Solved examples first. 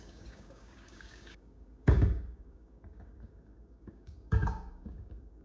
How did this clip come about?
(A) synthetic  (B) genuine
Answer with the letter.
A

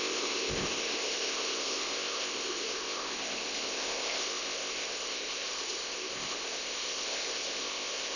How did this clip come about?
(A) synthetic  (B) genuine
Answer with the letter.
A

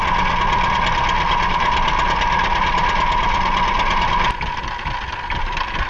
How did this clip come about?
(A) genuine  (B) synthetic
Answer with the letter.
A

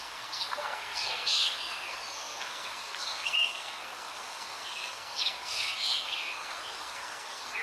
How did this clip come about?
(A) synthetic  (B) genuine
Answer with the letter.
A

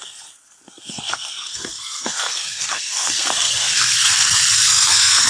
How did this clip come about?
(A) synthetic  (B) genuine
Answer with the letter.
A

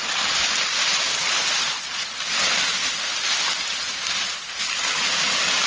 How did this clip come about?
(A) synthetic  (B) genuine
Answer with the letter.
B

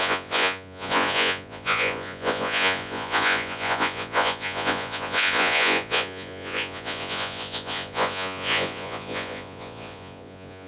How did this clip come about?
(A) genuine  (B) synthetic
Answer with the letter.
B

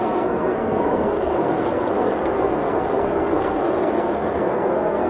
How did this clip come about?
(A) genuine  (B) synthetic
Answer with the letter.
B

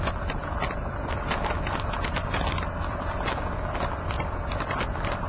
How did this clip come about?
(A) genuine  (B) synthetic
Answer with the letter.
A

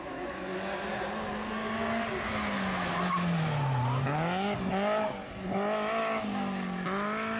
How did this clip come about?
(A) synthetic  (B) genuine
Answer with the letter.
B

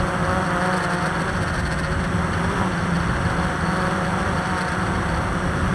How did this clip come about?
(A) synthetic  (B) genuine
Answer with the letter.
B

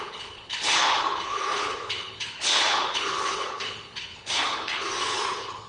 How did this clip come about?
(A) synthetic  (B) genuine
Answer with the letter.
A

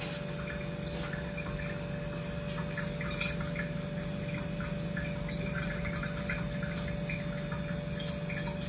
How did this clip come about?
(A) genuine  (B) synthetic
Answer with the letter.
A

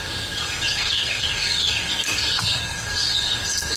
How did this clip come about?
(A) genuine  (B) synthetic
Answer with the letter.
B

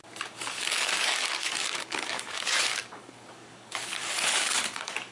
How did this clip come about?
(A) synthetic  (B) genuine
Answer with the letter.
A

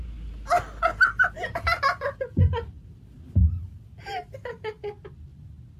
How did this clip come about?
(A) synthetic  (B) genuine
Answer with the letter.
B